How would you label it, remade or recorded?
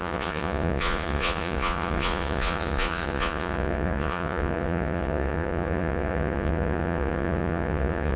remade